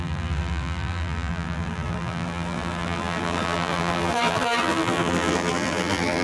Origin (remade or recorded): remade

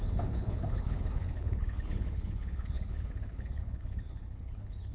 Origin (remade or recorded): remade